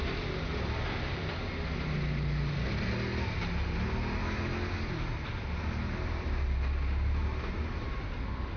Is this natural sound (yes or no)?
yes